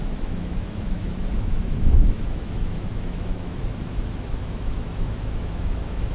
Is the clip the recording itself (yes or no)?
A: no